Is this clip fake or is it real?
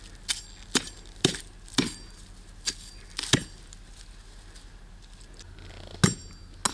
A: real